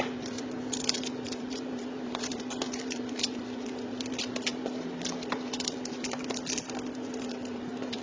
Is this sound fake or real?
fake